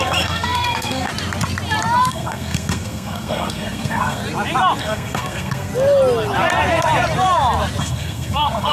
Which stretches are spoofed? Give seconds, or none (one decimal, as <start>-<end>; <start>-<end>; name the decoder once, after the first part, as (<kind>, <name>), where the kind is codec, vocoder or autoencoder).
0.0-1.1 (codec, SNAC); 2.0-4.2; 4.8-5.7; 7.8-8.7